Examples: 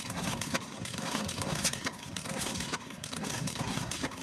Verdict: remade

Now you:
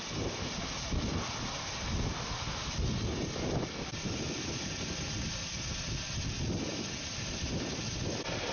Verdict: recorded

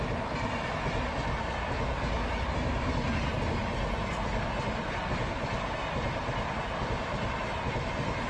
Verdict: recorded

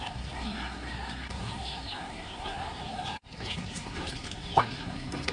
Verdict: remade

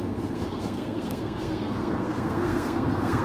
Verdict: remade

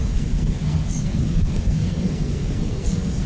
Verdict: remade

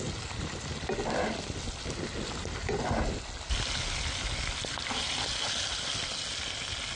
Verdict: recorded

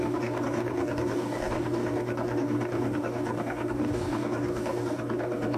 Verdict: remade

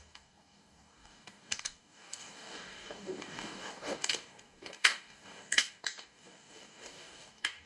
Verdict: remade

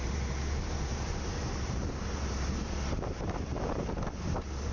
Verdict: remade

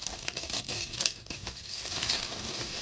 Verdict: remade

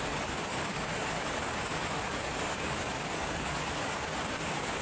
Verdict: remade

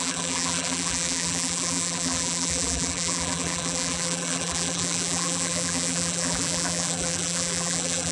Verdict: remade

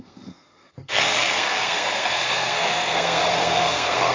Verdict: remade